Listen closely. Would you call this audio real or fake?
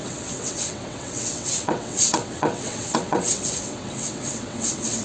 fake